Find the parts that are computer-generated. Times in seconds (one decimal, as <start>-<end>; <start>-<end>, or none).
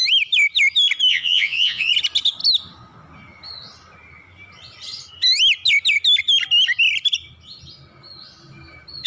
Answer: 1.1-1.9